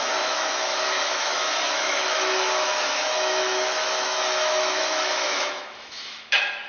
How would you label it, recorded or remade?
remade